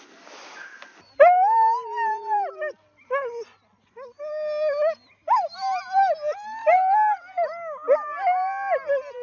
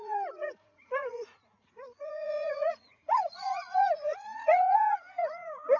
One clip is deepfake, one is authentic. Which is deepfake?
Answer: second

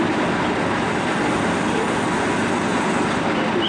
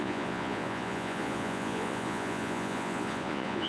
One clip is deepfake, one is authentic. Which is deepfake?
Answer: second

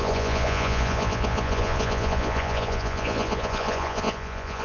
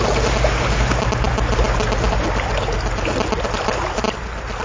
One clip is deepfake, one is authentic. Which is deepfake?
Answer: first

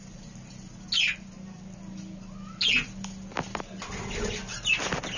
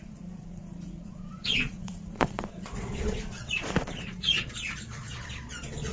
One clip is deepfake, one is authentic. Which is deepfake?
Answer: second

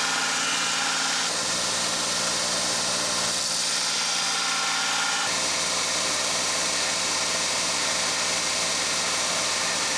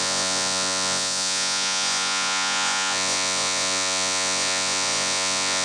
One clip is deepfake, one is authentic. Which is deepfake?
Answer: second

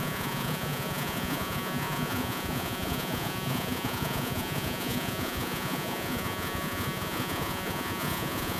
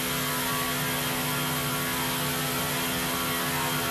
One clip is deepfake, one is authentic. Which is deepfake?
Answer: first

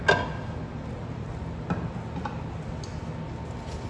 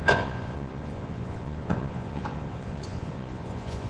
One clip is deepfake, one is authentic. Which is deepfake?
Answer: second